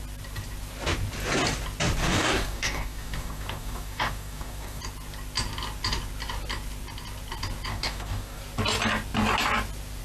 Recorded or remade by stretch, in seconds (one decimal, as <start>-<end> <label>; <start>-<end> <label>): 0.0-2.0 recorded; 2.0-4.8 remade; 4.8-7.7 recorded; 7.7-8.4 remade; 8.4-10.0 recorded